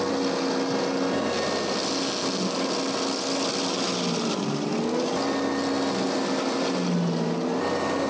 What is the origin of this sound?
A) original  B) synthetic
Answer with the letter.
A